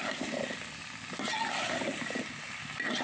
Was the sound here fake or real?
real